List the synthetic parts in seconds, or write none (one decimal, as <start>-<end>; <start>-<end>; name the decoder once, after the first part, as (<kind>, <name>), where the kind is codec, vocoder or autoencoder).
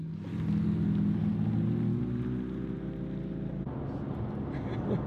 none